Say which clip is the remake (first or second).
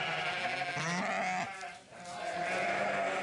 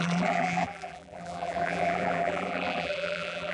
second